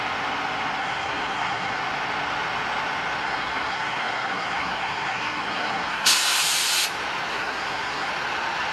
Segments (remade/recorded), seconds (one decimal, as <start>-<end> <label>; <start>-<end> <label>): 0.0-0.8 recorded; 0.8-1.8 remade; 1.8-3.2 recorded; 3.2-6.4 remade; 6.4-7.3 recorded; 7.3-8.1 remade; 8.1-8.7 recorded